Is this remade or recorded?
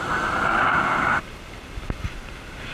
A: recorded